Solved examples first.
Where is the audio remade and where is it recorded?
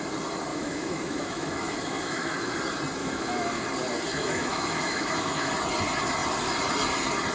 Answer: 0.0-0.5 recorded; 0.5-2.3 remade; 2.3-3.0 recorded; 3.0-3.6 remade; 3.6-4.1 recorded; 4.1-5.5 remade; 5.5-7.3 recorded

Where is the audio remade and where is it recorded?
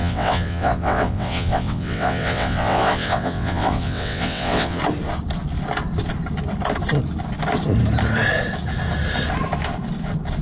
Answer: 0.0-4.8 remade; 4.8-10.4 recorded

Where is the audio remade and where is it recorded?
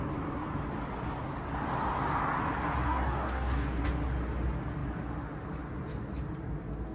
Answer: 0.0-2.8 recorded; 2.8-3.9 remade; 3.9-6.9 recorded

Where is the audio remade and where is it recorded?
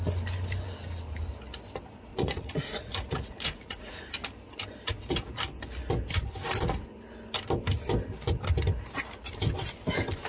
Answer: 0.0-2.1 recorded; 2.1-4.1 remade; 4.1-10.3 recorded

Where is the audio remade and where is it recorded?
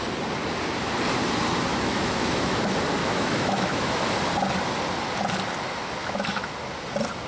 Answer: 0.0-1.7 recorded; 1.7-2.6 remade; 2.6-3.0 recorded; 3.0-4.0 remade; 4.0-6.0 recorded; 6.0-6.5 remade; 6.5-7.3 recorded